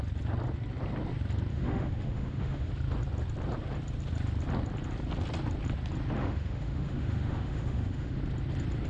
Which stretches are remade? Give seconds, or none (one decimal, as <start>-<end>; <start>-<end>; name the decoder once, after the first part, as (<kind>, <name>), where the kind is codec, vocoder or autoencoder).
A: 1.5-2.7 (autoencoder, DAC-VAE); 6.2-8.2